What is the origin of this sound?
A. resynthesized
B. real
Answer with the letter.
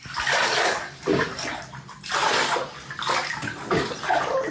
B